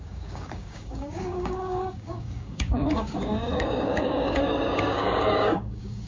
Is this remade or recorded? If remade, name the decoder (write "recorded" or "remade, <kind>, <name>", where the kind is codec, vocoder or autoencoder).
remade, codec, DAC